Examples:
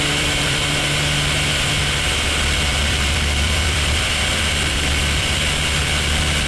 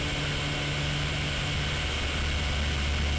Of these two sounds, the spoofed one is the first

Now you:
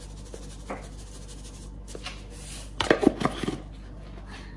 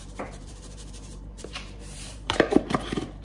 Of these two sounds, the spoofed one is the second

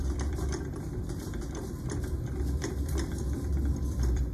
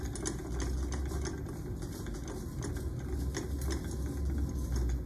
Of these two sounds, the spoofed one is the first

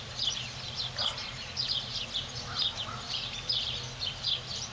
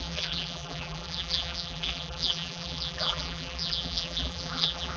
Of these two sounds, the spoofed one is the second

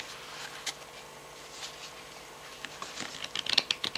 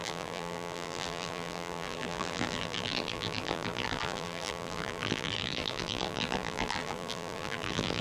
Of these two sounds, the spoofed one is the second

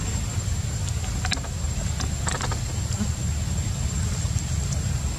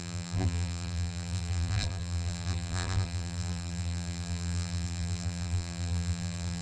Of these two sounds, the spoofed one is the second